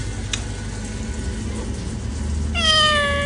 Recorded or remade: recorded